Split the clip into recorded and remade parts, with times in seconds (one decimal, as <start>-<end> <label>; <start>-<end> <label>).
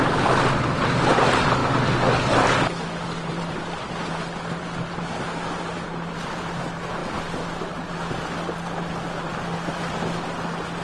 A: 0.0-10.8 recorded